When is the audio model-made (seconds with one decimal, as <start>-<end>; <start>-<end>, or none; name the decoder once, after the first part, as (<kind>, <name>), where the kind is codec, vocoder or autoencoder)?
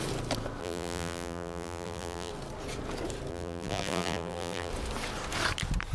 0.6-2.3 (vocoder, BigVGAN v2); 3.3-4.7